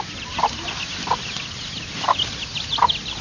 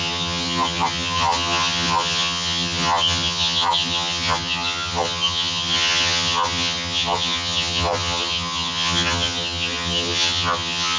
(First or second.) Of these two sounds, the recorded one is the first